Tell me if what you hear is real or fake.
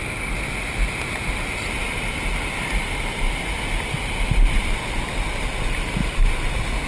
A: real